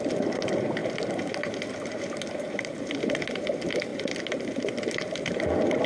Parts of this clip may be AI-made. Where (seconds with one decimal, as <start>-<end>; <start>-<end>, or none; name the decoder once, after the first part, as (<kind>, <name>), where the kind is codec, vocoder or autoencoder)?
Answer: none